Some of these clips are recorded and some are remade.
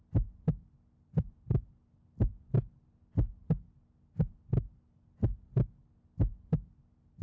recorded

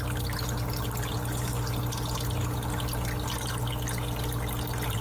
recorded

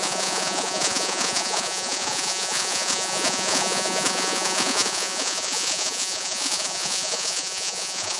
remade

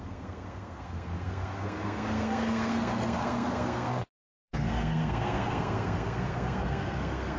remade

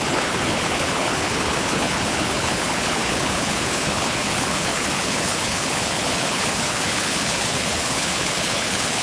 remade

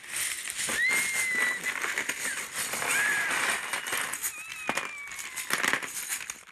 recorded